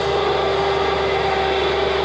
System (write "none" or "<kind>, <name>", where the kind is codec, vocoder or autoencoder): none